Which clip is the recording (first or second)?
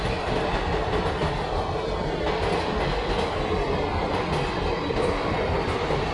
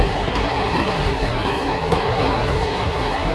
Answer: first